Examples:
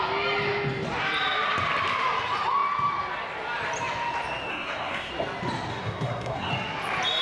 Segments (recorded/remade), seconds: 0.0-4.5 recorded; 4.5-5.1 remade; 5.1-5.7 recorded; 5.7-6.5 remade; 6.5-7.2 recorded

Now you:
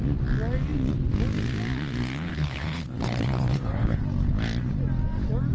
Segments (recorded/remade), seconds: 0.0-2.3 recorded; 2.3-4.0 remade; 4.0-5.5 recorded

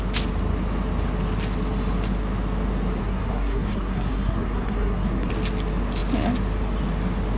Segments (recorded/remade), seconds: 0.0-3.0 recorded; 3.0-5.3 remade; 5.3-7.4 recorded

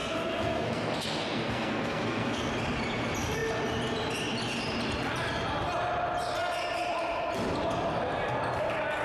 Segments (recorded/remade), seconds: 0.0-2.5 remade; 2.5-9.0 recorded